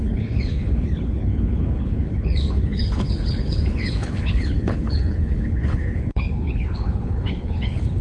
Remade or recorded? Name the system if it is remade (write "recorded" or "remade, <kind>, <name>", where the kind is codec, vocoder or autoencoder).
remade, codec, HILCodec